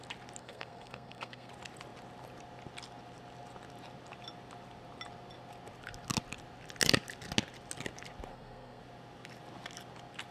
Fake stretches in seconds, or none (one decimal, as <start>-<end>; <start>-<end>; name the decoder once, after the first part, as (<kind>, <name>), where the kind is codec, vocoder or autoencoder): 0.4-1.5 (codec, SNAC); 8.3-8.8